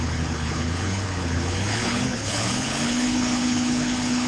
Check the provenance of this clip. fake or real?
fake